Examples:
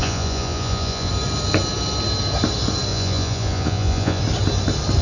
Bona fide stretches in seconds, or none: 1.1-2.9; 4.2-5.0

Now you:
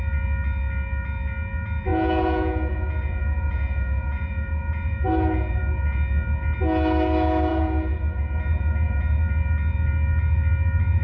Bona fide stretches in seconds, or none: 0.0-1.9; 5.6-7.5; 9.2-11.0

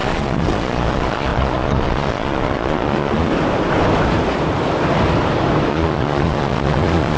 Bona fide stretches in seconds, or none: 3.3-5.7

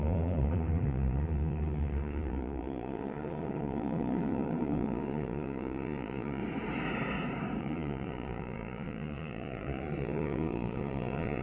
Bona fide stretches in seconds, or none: 6.4-7.6

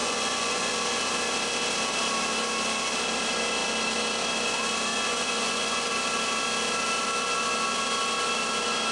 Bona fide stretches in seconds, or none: 0.7-4.9; 5.9-8.9

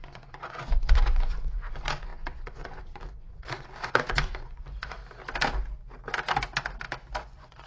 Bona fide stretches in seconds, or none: 5.0-7.2